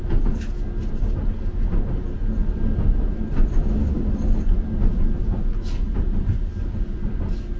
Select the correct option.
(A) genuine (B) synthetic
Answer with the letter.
A